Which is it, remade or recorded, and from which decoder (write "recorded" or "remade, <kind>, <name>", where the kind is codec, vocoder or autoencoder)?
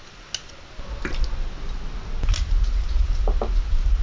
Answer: recorded